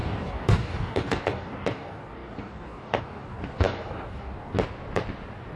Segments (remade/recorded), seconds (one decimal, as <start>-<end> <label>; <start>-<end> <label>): 0.0-4.5 remade; 4.5-5.6 recorded